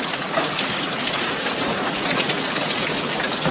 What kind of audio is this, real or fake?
fake